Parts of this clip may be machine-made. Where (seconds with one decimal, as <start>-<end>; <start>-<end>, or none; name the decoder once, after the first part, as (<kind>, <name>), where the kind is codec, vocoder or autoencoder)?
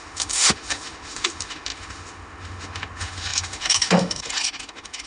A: 0.0-5.1 (autoencoder, DAC-VAE)